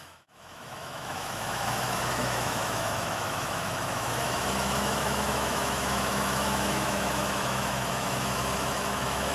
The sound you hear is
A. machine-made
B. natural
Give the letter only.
A